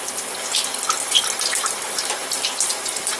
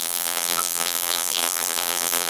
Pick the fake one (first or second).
second